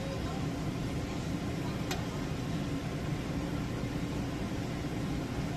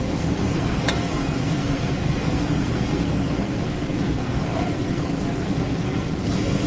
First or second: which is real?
first